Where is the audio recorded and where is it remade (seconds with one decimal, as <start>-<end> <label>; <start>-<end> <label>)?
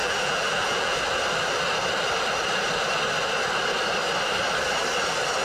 0.0-1.0 remade; 1.0-5.4 recorded